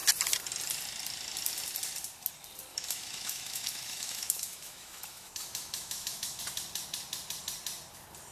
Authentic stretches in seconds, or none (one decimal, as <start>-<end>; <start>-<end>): 0.0-2.7; 6.4-8.3